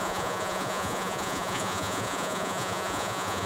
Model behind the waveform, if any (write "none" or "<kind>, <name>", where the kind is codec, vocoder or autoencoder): vocoder, Vocos